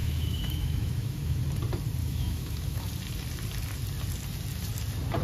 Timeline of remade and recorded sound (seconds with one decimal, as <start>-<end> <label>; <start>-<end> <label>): 0.0-1.4 remade; 1.4-2.0 recorded; 2.0-2.9 remade; 2.9-5.2 recorded